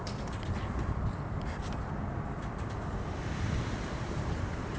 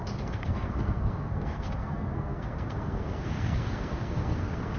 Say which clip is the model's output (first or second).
second